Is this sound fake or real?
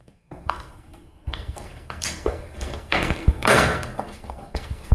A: fake